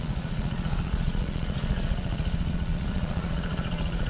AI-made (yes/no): yes